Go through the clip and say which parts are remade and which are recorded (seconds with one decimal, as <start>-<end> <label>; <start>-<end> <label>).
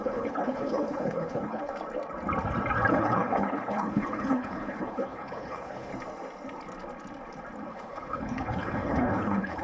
0.0-1.7 remade; 1.7-2.9 recorded; 2.9-5.9 remade; 5.9-7.7 recorded; 7.7-9.6 remade